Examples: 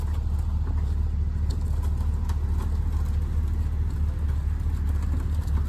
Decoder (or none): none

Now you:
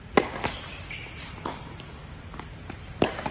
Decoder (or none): none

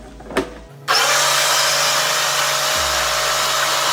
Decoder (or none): none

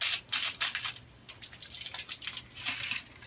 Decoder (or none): none